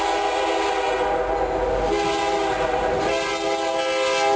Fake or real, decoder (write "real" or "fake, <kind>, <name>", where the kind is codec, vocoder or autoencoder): real